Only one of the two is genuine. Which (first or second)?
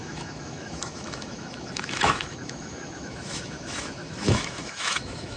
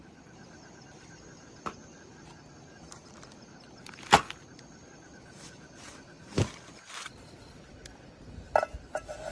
second